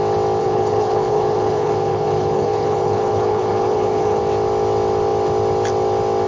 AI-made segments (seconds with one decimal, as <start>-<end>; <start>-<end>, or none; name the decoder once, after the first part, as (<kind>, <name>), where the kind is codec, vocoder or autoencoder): 0.4-4.2 (codec, HILCodec)